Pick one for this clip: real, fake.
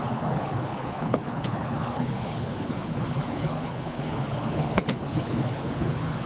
fake